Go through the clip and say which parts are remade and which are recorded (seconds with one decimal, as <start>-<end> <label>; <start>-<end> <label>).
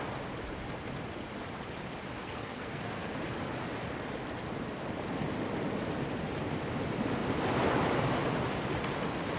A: 0.0-2.2 recorded; 2.2-3.1 remade; 3.1-9.4 recorded